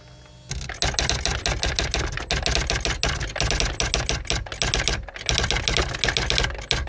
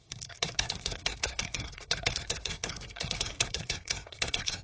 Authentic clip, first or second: first